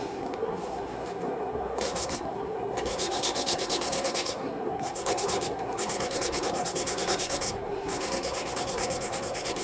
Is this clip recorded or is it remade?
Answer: remade